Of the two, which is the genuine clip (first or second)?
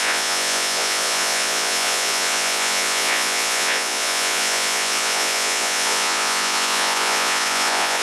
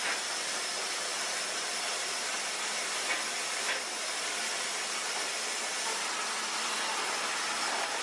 second